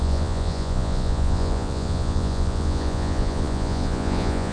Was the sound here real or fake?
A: fake